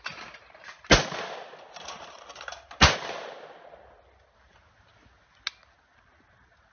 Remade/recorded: recorded